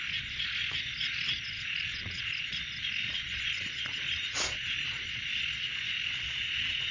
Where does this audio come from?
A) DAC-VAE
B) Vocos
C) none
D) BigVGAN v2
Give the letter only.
B